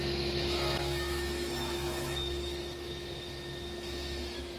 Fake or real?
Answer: fake